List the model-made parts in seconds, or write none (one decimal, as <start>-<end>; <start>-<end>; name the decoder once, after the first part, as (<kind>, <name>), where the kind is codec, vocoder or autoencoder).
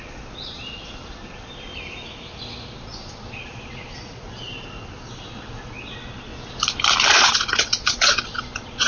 0.0-1.7 (vocoder, Vocos); 2.8-6.3; 7.1-8.9